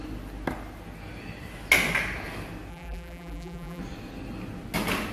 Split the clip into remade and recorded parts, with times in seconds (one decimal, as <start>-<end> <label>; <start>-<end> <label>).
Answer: 0.0-2.7 recorded; 2.7-3.8 remade; 3.8-5.1 recorded